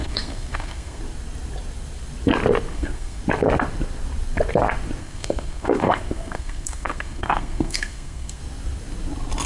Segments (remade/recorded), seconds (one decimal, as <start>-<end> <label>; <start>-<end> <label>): 0.0-1.0 remade; 1.0-2.7 recorded; 2.7-3.2 remade; 3.2-5.0 recorded; 5.0-8.4 remade; 8.4-9.5 recorded